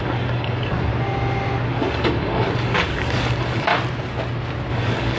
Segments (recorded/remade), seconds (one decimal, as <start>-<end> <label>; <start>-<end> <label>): 0.0-0.9 remade; 0.9-1.7 recorded; 1.7-3.7 remade; 3.7-4.7 recorded; 4.7-5.2 remade